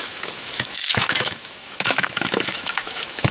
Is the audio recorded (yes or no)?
no